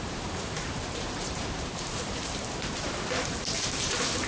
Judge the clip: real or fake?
fake